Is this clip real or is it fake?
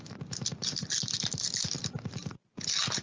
real